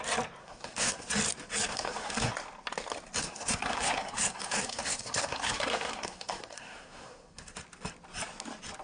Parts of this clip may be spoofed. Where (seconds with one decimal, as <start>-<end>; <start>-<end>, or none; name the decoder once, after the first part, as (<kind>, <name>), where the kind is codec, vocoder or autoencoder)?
0.4-1.1 (codec, SNAC); 1.7-2.3; 3.2-7.5